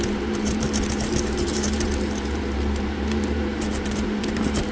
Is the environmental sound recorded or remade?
remade